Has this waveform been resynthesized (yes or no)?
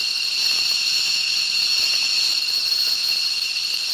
yes